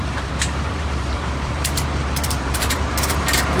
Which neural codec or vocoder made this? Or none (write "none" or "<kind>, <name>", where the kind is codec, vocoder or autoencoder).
vocoder, BigVGAN v2